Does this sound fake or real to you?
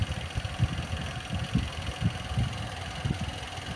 real